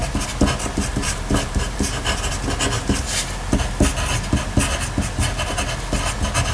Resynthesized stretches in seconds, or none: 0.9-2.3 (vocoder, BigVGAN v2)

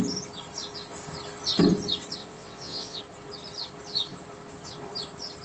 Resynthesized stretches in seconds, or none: 2.2-3.0 (vocoder, WaveNeXt)